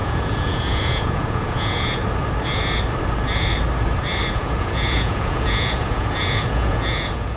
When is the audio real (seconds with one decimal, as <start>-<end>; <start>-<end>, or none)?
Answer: 2.0-4.3